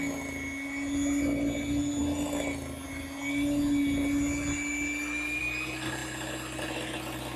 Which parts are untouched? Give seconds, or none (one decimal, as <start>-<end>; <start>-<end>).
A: 0.0-7.4